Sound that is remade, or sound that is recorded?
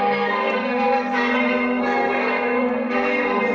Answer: remade